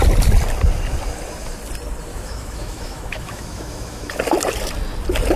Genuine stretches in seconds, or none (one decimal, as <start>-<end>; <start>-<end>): 0.0-2.1; 4.1-5.4